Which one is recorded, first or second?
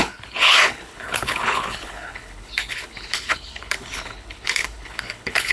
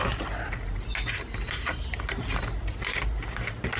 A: second